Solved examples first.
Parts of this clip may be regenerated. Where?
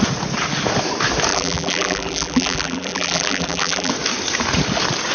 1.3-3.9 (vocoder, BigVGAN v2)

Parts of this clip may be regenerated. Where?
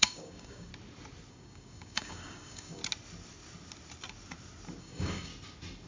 0.0-0.7 (codec, DAC); 1.3-2.8; 4.8-5.3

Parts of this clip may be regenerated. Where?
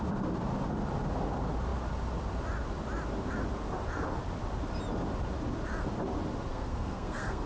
6.5-7.5 (codec, SNAC)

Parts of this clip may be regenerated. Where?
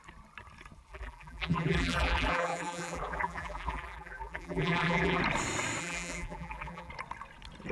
0.9-5.2 (vocoder, BigVGAN v2); 5.8-6.9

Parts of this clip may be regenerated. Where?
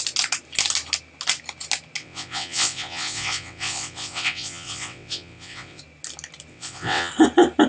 2.0-5.8 (vocoder, WaveNeXt); 6.5-7.1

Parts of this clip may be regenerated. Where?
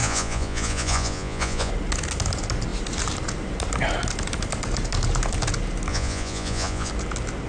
0.0-1.7 (vocoder, Vocos); 5.9-6.9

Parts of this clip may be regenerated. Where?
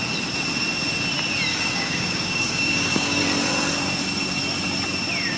1.5-3.2 (codec, DAC)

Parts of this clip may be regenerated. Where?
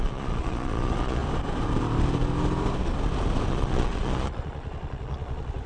0.0-1.2 (vocoder, Vocos); 3.5-5.7